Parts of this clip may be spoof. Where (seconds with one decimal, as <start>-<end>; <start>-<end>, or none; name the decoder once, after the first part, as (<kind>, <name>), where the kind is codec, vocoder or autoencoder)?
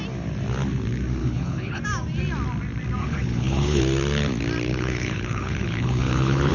1.2-1.8 (codec, HILCodec); 3.0-3.8; 4.7-6.5